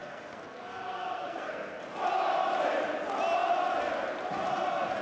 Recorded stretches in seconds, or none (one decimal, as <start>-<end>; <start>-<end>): 1.8-5.0